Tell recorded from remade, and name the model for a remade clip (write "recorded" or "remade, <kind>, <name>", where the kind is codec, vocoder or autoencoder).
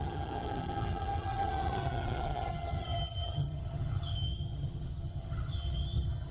remade, vocoder, HiFi-GAN